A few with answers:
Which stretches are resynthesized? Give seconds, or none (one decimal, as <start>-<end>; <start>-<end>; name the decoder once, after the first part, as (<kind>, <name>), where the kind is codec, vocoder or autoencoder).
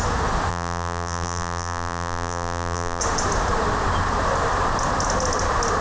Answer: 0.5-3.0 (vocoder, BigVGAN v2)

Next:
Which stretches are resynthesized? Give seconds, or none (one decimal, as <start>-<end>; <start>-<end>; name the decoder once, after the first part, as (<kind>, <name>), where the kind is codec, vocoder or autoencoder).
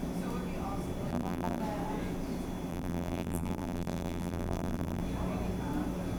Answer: 1.1-1.6 (vocoder, BigVGAN v2); 2.7-5.0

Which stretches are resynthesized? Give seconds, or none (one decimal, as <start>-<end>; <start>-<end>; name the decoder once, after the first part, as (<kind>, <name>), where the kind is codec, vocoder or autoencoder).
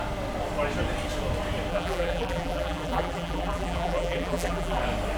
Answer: 1.7-4.8 (vocoder, BigVGAN v2)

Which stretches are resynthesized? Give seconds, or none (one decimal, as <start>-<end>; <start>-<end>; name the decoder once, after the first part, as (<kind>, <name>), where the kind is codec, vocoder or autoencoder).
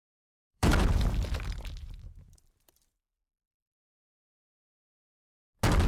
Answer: 0.0-0.7 (vocoder, BigVGAN v2); 1.6-4.6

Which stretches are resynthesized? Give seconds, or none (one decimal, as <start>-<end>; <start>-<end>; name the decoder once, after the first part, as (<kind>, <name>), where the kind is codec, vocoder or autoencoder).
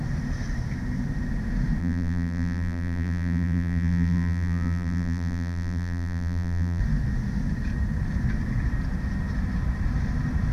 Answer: 1.8-6.8 (vocoder, BigVGAN v2)